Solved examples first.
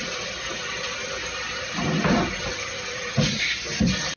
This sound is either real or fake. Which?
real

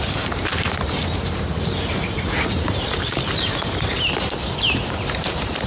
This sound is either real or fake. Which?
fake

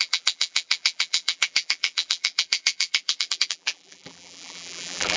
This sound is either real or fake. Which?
fake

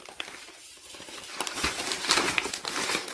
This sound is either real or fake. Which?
fake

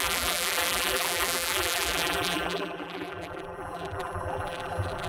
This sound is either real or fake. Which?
fake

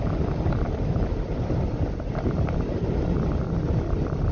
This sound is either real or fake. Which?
real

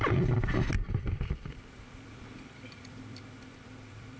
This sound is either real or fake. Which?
fake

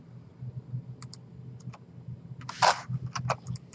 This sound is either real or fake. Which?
real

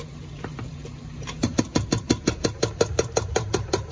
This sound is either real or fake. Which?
fake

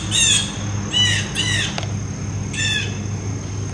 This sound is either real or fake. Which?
real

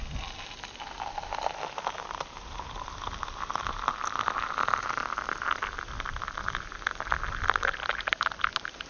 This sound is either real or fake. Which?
real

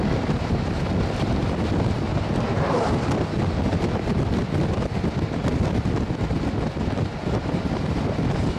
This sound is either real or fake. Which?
real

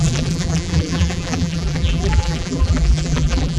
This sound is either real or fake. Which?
fake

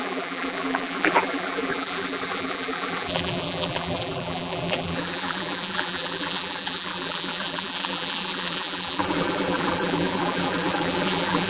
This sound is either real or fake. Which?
fake